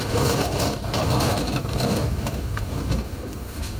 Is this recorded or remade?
remade